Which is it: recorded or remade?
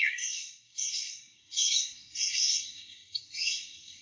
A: remade